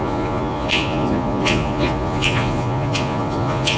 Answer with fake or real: fake